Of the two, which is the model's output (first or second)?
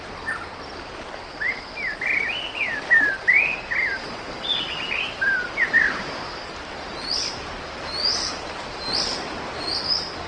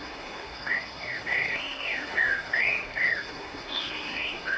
second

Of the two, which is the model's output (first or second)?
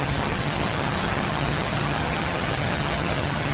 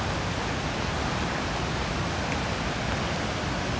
first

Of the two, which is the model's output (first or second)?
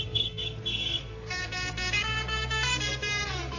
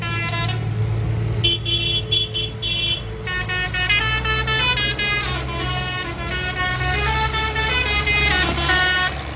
first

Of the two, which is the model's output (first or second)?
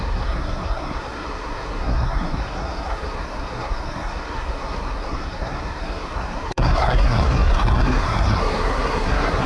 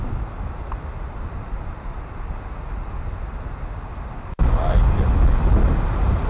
first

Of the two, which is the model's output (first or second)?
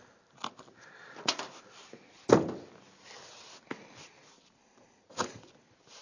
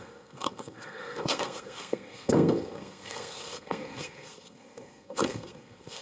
second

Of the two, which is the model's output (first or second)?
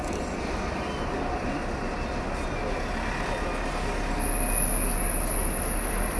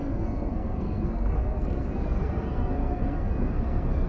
second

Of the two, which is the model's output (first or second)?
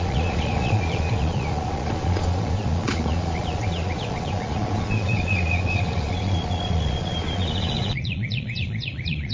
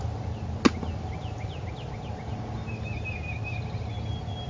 first